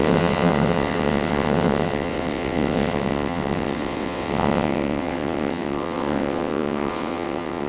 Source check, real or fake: fake